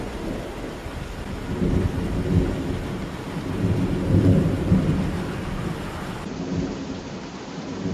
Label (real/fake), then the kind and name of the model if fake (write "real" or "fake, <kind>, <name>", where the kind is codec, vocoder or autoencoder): real